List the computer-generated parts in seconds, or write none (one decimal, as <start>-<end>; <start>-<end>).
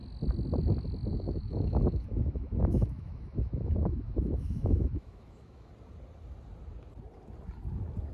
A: 1.1-5.7